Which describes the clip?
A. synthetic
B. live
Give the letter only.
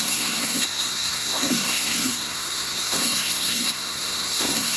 A